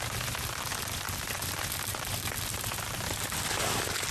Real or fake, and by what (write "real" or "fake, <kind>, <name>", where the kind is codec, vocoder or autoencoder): real